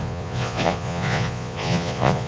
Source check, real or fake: fake